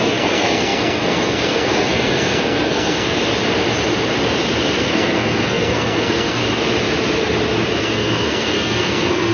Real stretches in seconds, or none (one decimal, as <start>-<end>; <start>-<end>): 3.2-4.8; 6.4-7.8